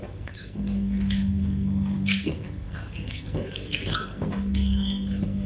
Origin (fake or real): fake